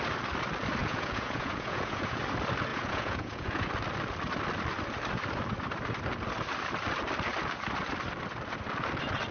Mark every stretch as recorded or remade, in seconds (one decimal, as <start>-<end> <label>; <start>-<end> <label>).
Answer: 0.0-0.8 recorded; 0.8-2.2 remade; 2.2-2.7 recorded; 2.7-3.7 remade; 3.7-9.3 recorded